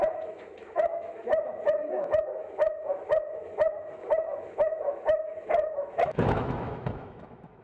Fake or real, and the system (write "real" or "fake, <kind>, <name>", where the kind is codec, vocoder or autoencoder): fake, autoencoder, DAC-VAE